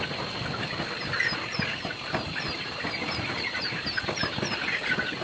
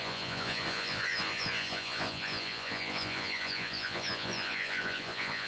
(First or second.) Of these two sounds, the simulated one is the second